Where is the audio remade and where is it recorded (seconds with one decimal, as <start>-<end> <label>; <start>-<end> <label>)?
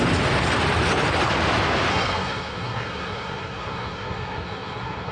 0.0-1.9 recorded; 1.9-5.1 remade